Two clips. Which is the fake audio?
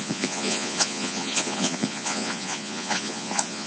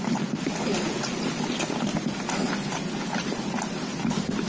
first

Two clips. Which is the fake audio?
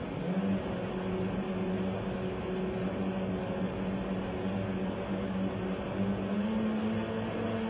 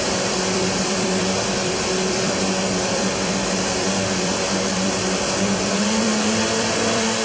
second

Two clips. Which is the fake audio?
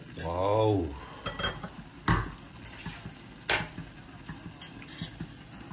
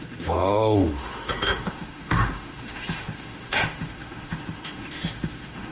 second